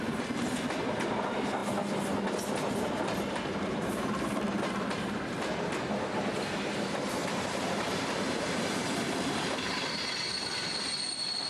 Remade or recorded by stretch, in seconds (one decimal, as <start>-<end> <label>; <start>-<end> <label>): 0.0-7.2 recorded; 7.2-10.0 remade; 10.0-11.5 recorded